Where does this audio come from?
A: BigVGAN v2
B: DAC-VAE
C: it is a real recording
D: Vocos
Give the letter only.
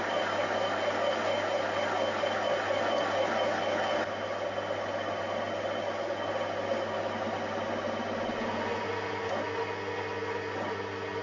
C